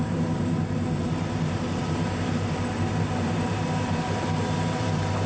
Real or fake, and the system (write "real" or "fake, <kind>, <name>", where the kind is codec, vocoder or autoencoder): fake, vocoder, BigVGAN v2